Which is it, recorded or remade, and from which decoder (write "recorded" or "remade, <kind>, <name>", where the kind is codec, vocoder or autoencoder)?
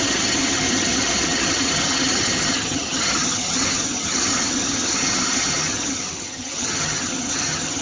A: remade, vocoder, HiFi-GAN